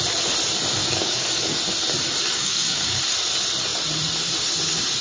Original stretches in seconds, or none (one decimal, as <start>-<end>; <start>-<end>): 0.0-0.8; 1.6-2.3; 3.0-5.0

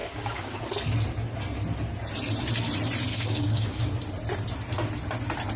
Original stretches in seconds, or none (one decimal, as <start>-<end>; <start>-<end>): 0.6-3.1; 3.8-5.6